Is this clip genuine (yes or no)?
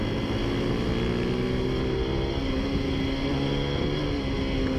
yes